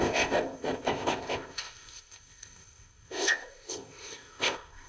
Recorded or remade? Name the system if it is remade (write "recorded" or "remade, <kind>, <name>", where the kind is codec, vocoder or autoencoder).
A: remade, codec, ZipCodec